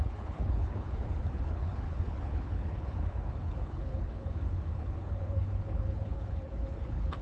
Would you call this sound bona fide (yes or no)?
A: no